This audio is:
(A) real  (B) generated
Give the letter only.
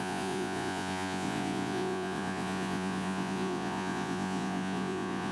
B